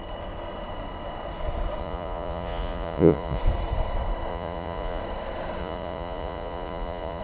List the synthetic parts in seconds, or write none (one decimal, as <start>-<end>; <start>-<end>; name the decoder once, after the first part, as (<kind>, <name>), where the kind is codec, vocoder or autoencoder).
1.8-3.4 (vocoder, Vocos); 4.3-5.0; 5.6-7.2